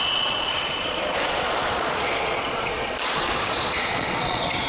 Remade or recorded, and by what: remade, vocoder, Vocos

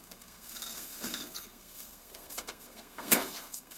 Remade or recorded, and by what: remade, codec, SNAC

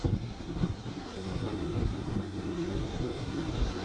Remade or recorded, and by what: remade, codec, SNAC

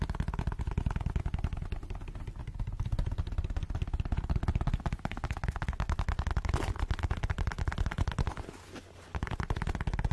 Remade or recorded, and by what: recorded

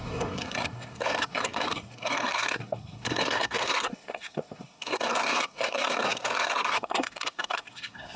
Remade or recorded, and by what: remade, codec, SNAC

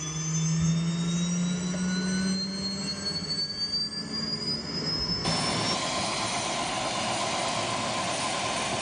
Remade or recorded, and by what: recorded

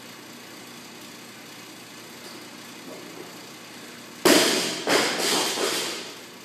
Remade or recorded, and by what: recorded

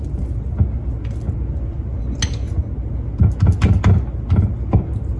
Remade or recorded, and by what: recorded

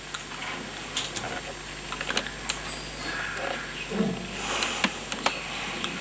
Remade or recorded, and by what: recorded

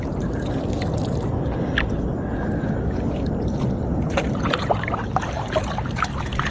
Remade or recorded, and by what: recorded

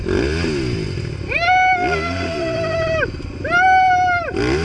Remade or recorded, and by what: recorded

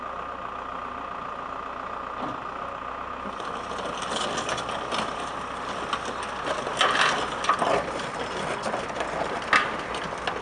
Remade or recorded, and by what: recorded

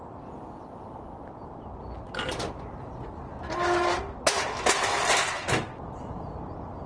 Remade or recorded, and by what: recorded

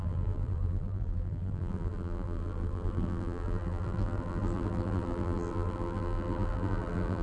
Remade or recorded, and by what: remade, vocoder, BigVGAN v2